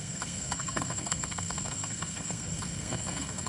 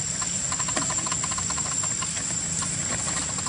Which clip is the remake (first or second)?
first